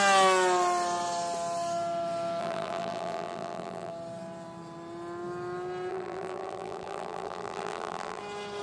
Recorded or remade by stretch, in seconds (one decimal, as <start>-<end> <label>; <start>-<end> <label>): 0.0-2.4 recorded; 2.4-3.9 remade; 3.9-5.9 recorded; 5.9-8.2 remade; 8.2-8.6 recorded

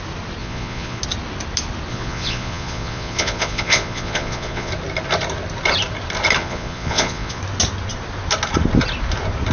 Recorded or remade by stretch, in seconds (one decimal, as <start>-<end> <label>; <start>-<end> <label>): 0.0-0.4 recorded; 0.4-1.0 remade; 1.0-1.9 recorded; 1.9-4.7 remade; 4.7-6.4 recorded; 6.4-7.4 remade; 7.4-9.5 recorded

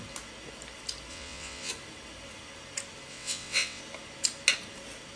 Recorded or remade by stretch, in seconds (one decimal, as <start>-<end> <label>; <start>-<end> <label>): 0.0-1.1 recorded; 1.1-1.7 remade; 1.7-3.1 recorded; 3.1-3.8 remade; 3.8-5.2 recorded

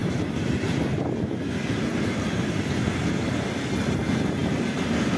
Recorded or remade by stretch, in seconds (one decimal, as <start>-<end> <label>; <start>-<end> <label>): 0.0-5.2 recorded

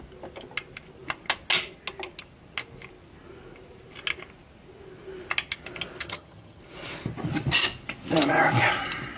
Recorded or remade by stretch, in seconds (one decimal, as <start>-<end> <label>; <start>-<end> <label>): 0.0-6.0 recorded; 6.0-6.6 remade; 6.6-9.2 recorded

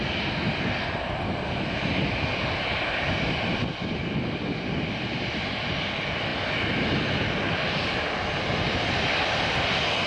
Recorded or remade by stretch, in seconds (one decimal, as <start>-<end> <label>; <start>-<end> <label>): 0.0-10.1 recorded

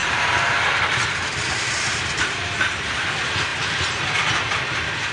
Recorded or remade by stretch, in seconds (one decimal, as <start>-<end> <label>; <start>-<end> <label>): 0.0-3.1 remade; 3.1-3.5 recorded; 3.5-4.2 remade; 4.2-5.1 recorded